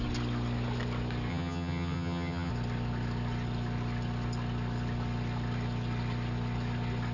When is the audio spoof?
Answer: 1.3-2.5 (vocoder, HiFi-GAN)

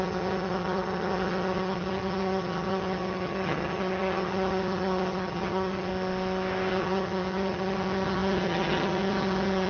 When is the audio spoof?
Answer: 0.0-5.9 (vocoder, HiFi-GAN); 6.7-9.7